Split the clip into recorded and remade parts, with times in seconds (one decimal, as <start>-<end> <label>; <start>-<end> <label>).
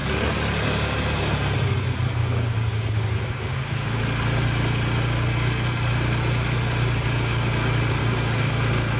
0.0-2.2 recorded; 2.2-4.0 remade; 4.0-8.0 recorded; 8.0-8.5 remade; 8.5-9.0 recorded